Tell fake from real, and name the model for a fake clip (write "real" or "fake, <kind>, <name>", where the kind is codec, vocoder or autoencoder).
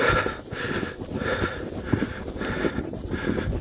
real